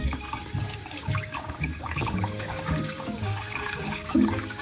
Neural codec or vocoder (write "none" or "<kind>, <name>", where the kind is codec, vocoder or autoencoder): codec, DAC